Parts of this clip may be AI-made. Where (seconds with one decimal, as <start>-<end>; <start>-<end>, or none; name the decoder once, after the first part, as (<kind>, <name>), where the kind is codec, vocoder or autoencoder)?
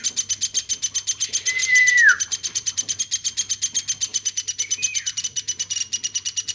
1.6-3.0 (vocoder, BigVGAN v2); 4.1-6.5